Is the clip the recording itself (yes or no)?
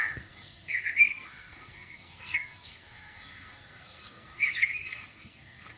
no